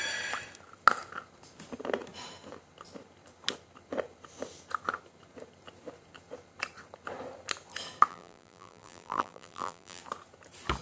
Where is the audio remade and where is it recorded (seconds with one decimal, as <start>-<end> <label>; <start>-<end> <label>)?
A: 0.0-8.1 recorded; 8.1-10.0 remade; 10.0-10.8 recorded

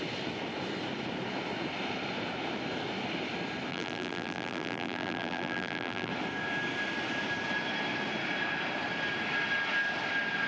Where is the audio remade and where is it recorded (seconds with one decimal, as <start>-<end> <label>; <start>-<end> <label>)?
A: 0.0-3.7 recorded; 3.7-6.1 remade; 6.1-10.5 recorded